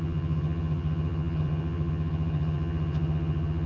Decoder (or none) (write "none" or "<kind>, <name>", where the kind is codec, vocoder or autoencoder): vocoder, HiFi-GAN